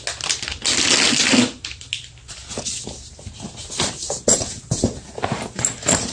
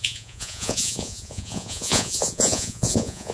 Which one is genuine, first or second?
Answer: first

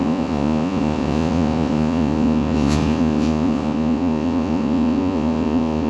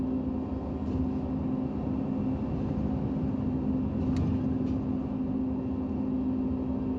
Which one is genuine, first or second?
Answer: second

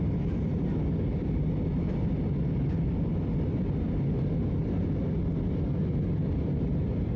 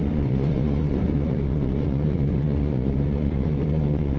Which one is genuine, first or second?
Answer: first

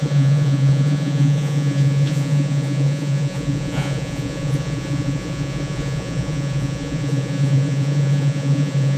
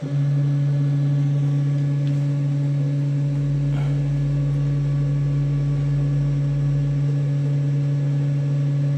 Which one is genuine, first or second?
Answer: second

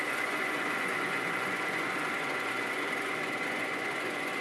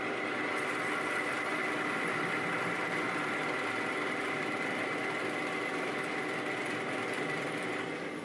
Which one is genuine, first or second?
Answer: second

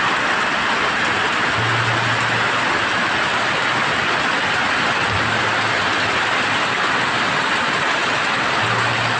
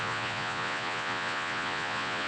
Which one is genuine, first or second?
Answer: first